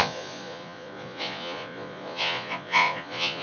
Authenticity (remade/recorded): remade